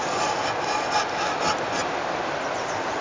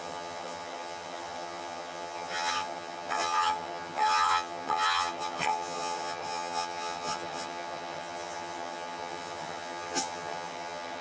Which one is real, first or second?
first